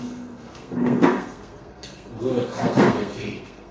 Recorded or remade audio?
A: remade